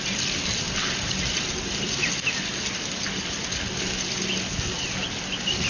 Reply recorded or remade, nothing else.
recorded